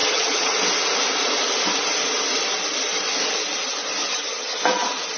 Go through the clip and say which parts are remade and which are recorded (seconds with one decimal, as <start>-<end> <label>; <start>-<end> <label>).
0.0-0.5 remade; 0.5-4.0 recorded; 4.0-4.6 remade; 4.6-5.2 recorded